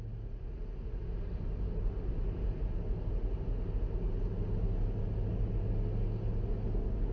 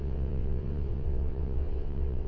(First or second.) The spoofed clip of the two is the second